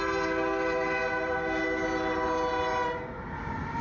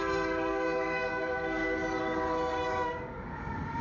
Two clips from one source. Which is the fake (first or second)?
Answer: second